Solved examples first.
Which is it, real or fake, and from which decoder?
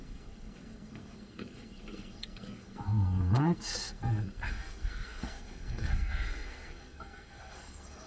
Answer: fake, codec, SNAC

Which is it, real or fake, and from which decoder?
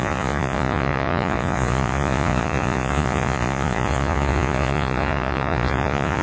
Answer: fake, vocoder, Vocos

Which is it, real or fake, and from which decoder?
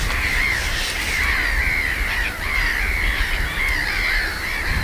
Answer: real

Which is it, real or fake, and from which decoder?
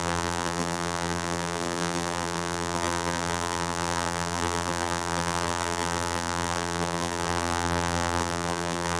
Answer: fake, vocoder, BigVGAN v2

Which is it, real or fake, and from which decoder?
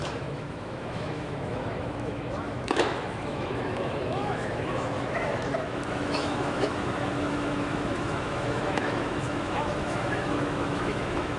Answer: fake, autoencoder, DAC-VAE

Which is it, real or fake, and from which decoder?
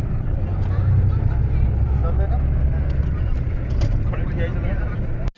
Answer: real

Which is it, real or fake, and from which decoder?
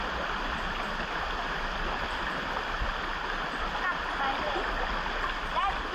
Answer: real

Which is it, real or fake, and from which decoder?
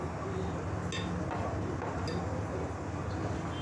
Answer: real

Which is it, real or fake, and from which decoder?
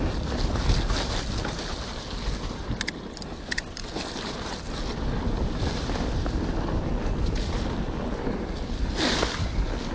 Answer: real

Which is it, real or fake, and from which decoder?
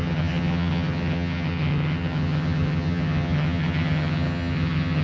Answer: fake, vocoder, HiFi-GAN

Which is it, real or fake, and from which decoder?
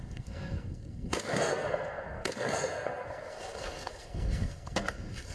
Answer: fake, codec, SNAC